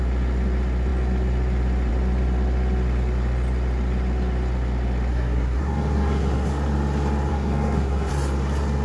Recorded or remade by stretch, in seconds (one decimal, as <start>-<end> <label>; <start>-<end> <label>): 0.0-5.1 recorded; 5.1-6.5 remade; 6.5-7.3 recorded; 7.3-8.1 remade; 8.1-8.8 recorded